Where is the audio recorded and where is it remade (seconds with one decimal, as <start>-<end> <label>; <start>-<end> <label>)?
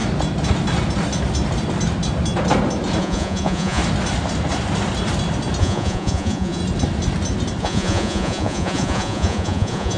0.0-3.0 recorded; 3.0-3.8 remade; 3.8-5.6 recorded; 5.6-6.6 remade; 6.6-7.6 recorded; 7.6-10.0 remade